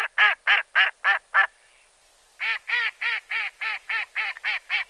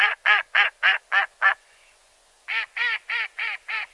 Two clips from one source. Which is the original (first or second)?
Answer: first